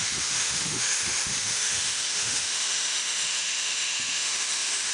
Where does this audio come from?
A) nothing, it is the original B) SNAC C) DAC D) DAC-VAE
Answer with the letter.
D